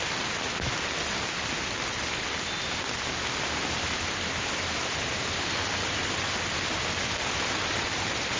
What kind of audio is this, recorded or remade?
recorded